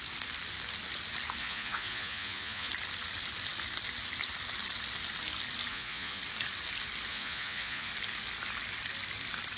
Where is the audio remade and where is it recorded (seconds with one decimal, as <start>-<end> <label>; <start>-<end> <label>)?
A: 0.0-1.4 recorded; 1.4-2.7 remade; 2.7-5.7 recorded; 5.7-6.2 remade; 6.2-7.1 recorded; 7.1-7.9 remade; 7.9-9.6 recorded